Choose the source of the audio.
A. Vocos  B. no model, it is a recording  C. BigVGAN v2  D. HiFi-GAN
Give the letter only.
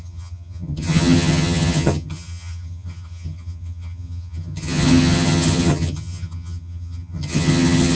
D